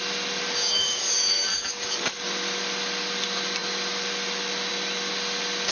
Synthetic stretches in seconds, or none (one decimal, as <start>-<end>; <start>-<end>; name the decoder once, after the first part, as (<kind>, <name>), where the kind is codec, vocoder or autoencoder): 0.6-2.2 (codec, DAC)